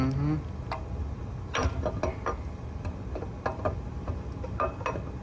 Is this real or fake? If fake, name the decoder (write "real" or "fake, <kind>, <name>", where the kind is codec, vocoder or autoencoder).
real